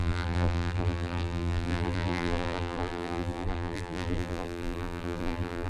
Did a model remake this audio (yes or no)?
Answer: yes